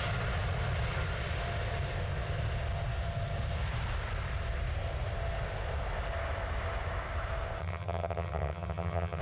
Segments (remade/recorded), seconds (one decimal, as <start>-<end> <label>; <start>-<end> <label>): 0.0-7.6 recorded; 7.6-9.2 remade